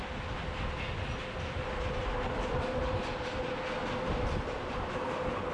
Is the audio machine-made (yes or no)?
no